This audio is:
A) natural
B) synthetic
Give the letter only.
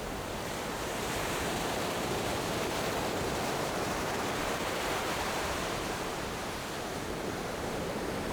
B